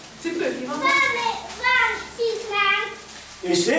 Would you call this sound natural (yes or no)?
yes